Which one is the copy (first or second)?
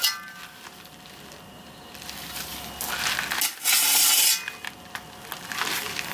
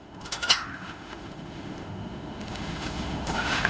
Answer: second